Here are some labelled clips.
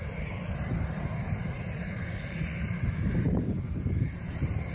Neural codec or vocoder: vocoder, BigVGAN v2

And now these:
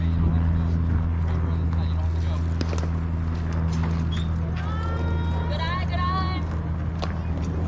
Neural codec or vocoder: none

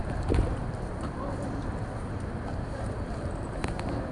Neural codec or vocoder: vocoder, BigVGAN v2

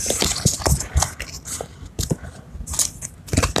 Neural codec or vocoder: none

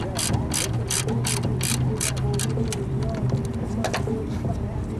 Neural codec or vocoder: none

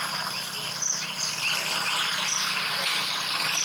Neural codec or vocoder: none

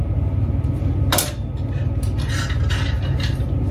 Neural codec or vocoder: none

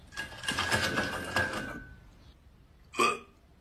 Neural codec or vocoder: none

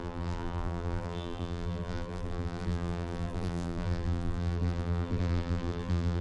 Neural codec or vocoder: vocoder, BigVGAN v2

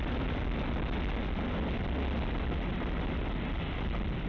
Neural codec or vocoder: none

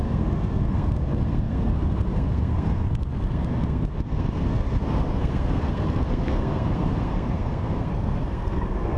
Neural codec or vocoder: codec, SNAC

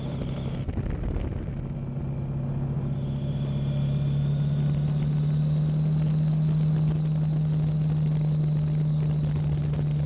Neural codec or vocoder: none